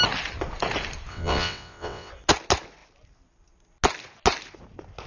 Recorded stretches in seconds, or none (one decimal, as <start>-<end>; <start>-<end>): 0.0-1.1; 2.1-5.1